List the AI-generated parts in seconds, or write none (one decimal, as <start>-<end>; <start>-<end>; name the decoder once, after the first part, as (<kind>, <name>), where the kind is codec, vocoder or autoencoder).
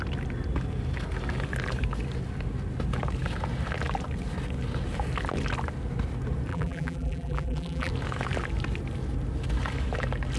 6.5-7.9 (vocoder, BigVGAN v2)